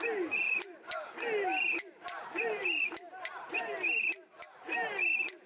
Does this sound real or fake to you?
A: real